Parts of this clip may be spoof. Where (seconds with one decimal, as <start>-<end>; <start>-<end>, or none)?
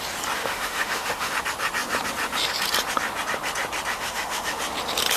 0.4-1.3; 3.9-4.6